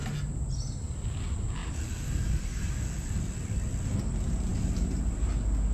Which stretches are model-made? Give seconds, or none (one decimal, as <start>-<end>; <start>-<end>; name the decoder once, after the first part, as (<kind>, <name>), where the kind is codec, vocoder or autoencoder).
none